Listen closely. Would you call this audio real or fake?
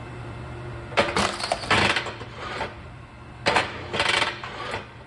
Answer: fake